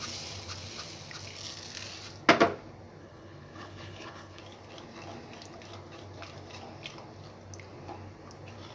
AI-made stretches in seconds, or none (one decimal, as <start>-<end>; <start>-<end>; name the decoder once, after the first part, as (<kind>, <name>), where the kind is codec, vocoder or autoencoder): 3.0-4.4 (codec, HILCodec)